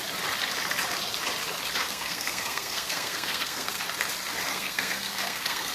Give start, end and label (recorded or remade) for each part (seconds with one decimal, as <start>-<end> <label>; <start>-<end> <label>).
0.0-1.8 recorded; 1.8-3.8 remade; 3.8-4.5 recorded; 4.5-5.7 remade